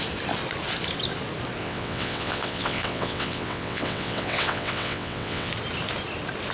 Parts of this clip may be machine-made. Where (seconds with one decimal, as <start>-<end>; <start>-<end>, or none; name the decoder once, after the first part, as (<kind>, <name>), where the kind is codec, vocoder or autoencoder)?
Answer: 1.6-5.5 (vocoder, WaveNeXt)